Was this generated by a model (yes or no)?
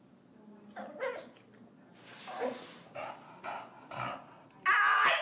no